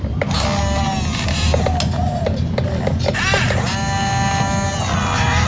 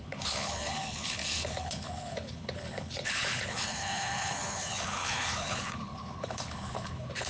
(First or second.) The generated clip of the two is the second